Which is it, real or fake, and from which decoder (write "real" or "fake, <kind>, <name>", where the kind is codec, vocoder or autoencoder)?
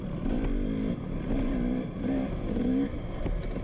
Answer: real